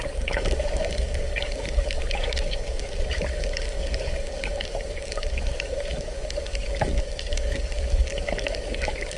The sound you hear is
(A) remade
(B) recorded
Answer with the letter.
A